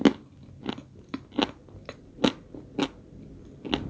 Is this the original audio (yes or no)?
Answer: yes